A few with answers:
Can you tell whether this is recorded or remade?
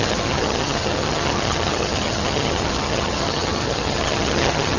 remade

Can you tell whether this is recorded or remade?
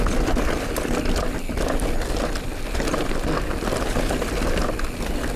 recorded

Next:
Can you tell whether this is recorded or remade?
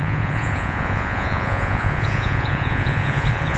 remade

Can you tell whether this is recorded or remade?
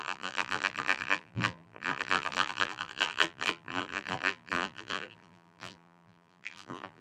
remade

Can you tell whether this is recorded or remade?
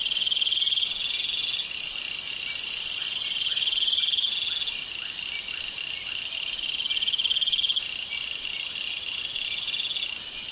recorded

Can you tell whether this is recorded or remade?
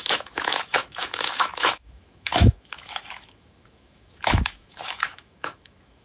remade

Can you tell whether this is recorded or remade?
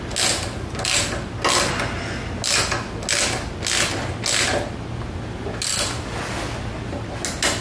recorded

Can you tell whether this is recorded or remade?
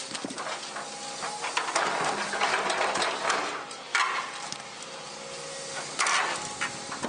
recorded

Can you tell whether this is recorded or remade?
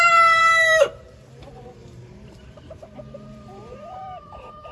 remade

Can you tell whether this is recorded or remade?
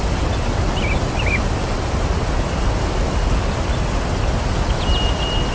recorded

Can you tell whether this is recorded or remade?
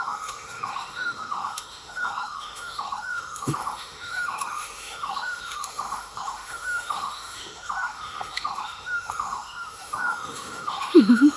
remade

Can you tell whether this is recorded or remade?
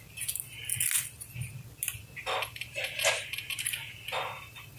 recorded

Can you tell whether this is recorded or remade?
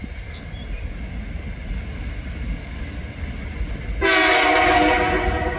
recorded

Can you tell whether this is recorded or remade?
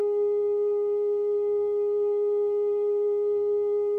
remade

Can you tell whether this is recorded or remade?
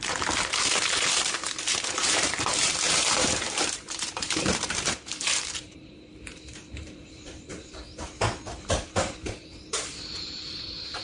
remade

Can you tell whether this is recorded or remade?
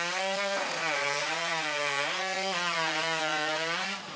remade